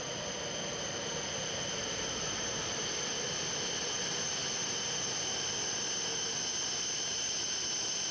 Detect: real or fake real